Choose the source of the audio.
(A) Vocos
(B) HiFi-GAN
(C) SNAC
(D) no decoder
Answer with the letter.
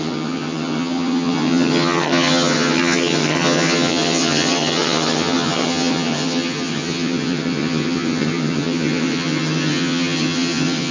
B